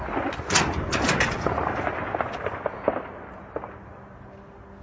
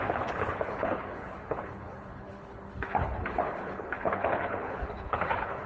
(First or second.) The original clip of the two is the first